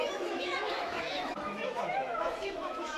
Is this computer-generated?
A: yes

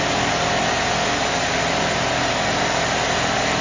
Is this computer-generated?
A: no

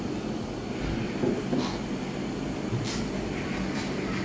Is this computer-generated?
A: no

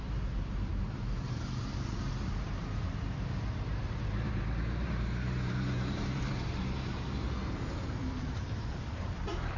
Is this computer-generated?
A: yes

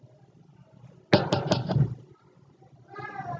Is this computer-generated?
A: no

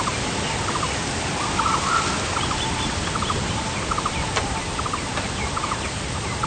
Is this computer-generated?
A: no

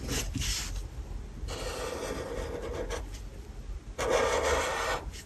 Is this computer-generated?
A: no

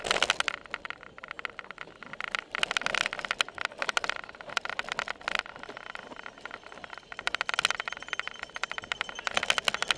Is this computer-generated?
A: no